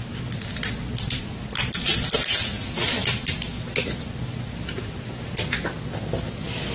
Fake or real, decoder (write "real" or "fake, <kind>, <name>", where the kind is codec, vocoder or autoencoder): real